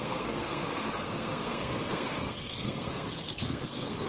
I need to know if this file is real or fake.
fake